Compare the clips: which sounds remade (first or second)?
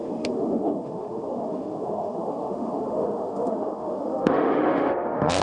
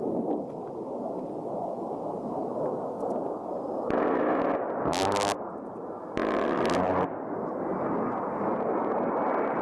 first